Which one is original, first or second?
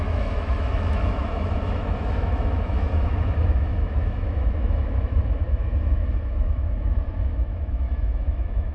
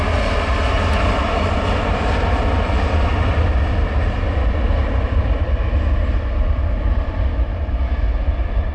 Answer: second